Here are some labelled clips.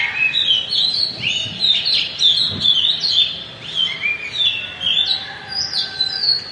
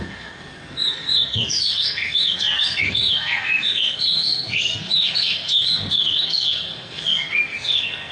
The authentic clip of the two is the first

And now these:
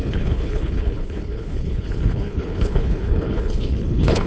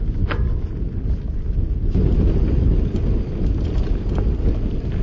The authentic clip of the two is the second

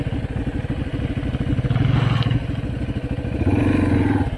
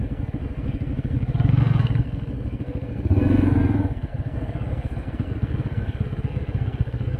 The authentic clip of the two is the first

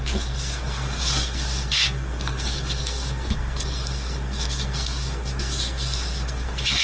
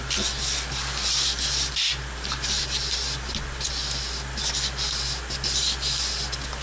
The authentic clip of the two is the second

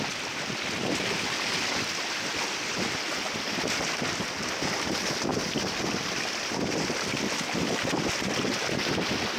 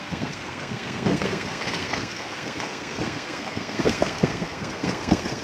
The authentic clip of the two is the first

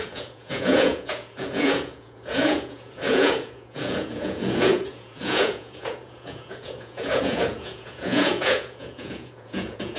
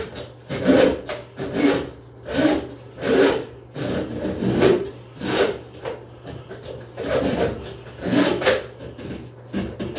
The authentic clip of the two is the second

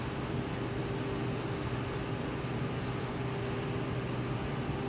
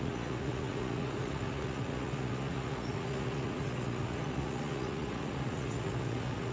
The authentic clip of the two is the first